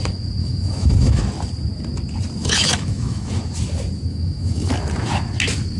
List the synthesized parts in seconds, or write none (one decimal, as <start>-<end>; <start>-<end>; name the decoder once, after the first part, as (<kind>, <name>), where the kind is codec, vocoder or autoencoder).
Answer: 0.4-1.2 (autoencoder, DAC-VAE); 2.4-3.3; 4.1-4.7